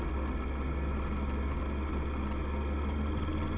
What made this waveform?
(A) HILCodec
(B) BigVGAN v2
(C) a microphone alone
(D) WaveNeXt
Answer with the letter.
C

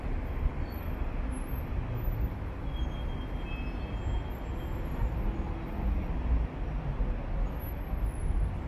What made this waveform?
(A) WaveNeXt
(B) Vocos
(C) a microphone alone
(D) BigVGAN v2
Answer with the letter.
C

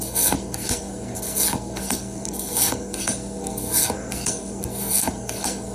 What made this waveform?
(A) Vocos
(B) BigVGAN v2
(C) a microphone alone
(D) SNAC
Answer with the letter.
D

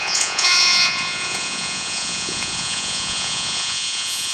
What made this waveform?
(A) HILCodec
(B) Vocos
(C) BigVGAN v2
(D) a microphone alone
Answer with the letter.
B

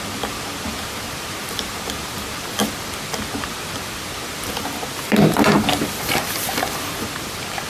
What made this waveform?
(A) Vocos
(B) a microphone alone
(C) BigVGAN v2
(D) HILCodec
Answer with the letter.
C